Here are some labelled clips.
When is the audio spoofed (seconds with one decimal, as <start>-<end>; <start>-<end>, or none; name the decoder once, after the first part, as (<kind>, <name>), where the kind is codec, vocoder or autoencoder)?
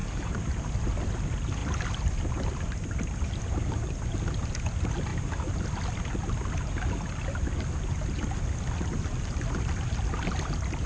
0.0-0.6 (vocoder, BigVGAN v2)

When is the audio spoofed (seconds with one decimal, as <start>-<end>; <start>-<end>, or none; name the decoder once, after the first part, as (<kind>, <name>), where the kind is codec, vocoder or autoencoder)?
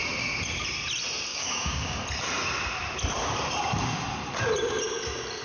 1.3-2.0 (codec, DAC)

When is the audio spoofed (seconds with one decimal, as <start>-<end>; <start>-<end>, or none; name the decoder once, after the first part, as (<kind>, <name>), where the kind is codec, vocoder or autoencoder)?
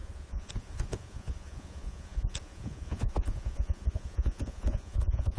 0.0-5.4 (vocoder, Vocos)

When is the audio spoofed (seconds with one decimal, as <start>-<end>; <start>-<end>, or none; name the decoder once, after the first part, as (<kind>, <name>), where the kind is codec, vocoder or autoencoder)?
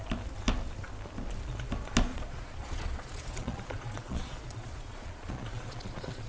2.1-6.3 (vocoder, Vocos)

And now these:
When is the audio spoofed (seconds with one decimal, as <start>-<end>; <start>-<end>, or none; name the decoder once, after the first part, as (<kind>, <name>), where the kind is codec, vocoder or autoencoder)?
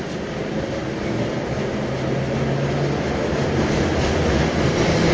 none